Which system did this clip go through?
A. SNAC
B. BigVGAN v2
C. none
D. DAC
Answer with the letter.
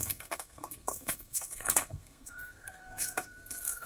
A